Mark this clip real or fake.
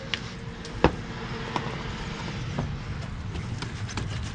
real